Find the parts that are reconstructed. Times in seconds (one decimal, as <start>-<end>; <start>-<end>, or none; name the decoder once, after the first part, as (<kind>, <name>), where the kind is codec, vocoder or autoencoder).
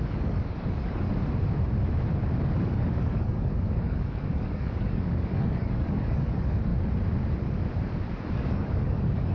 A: 0.0-1.2 (codec, DAC); 2.6-6.7; 8.3-9.3